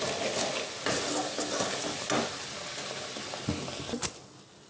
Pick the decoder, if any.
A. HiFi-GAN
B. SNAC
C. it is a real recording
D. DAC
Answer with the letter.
C